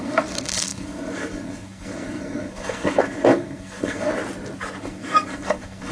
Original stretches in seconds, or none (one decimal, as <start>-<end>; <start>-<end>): 4.1-4.8